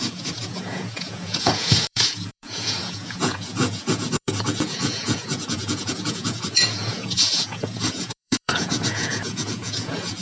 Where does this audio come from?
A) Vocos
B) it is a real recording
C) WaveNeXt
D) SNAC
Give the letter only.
A